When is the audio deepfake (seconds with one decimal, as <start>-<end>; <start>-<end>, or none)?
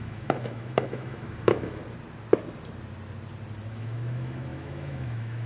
0.0-1.8; 3.7-5.5